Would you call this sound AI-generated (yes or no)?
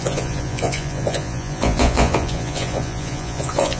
yes